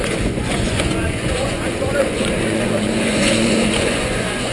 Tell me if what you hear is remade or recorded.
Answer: remade